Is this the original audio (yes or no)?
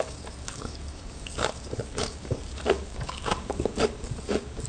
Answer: no